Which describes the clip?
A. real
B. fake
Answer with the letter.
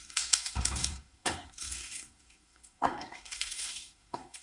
B